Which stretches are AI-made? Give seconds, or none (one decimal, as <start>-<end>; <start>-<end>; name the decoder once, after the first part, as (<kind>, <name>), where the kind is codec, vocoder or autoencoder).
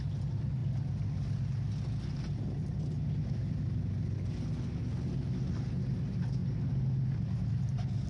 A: none